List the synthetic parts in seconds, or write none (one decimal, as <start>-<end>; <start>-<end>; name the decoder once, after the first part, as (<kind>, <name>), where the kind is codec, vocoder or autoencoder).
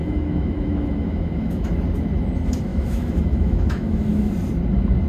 0.0-1.7 (autoencoder, DAC-VAE); 2.7-4.3